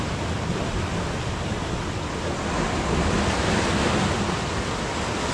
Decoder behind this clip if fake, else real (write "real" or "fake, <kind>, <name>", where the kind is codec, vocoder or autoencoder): real